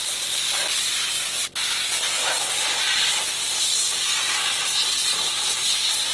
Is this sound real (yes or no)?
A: yes